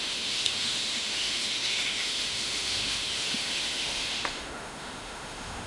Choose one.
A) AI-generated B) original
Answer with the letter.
A